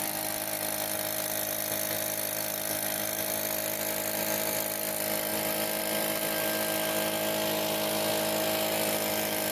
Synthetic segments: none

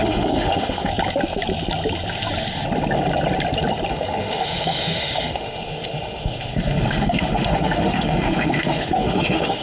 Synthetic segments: 0.0-0.9; 3.9-9.6

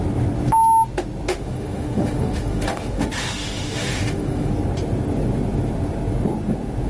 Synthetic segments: 1.3-4.5

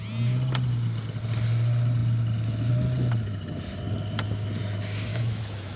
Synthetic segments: 5.1-5.8

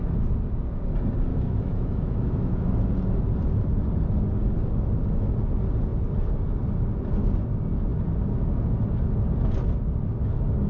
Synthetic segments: 1.3-2.7

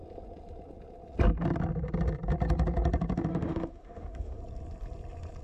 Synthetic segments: 3.3-4.4